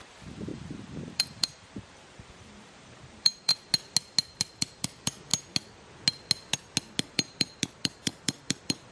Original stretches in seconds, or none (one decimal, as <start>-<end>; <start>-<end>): 3.5-4.5; 5.3-7.0